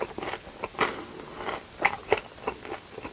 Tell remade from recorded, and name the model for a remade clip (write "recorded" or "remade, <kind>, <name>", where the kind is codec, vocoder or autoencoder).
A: recorded